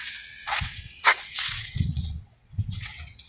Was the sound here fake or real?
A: fake